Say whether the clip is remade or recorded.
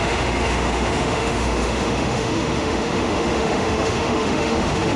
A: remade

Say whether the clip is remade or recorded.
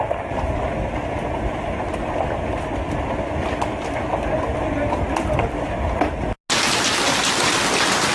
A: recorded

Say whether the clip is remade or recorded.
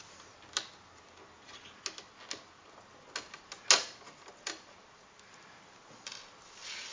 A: recorded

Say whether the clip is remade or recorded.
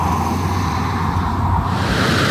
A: remade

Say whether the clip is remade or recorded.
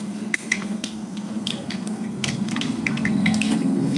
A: remade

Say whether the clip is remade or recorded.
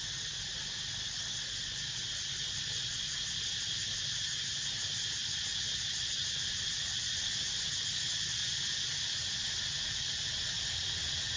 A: recorded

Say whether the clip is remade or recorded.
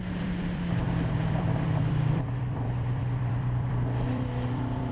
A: remade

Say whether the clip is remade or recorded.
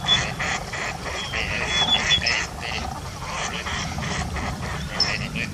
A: remade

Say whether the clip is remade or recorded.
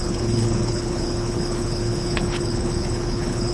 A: remade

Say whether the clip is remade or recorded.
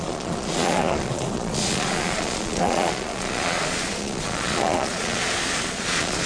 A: remade